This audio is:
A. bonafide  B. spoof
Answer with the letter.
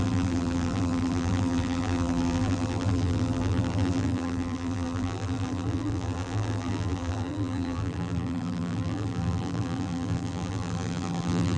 B